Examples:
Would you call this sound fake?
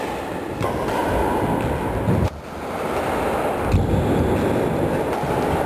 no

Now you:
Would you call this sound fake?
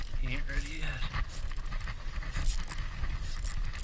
no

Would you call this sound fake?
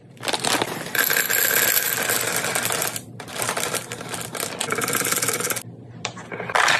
no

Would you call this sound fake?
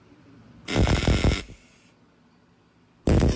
yes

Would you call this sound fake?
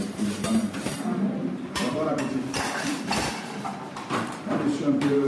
yes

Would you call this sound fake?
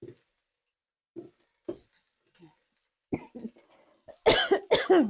no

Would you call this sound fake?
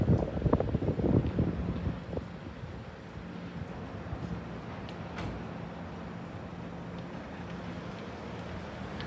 no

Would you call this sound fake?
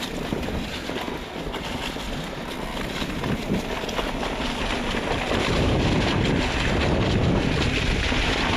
no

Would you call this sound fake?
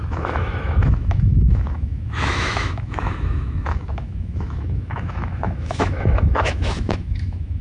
yes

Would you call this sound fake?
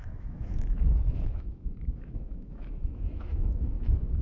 yes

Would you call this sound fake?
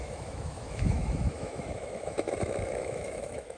yes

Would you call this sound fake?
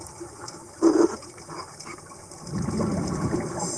no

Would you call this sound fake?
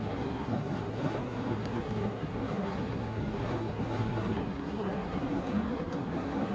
yes